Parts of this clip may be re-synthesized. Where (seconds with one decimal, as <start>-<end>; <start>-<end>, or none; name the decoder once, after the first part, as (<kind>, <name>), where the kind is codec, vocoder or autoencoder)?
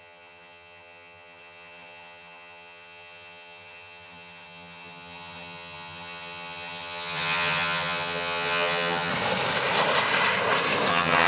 0.0-9.1 (vocoder, HiFi-GAN); 10.9-11.3